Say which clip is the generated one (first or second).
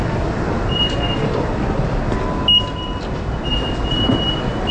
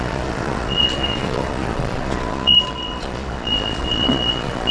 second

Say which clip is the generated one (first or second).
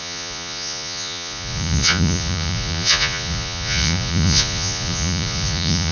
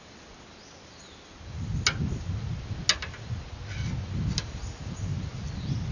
first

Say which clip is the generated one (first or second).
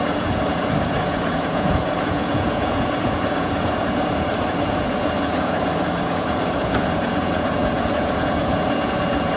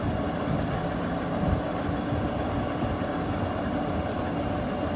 first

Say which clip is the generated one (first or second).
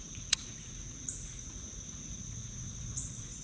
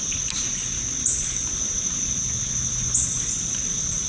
first